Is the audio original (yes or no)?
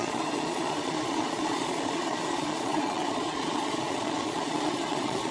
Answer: no